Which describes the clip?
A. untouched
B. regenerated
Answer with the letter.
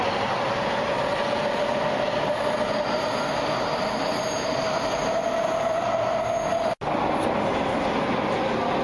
A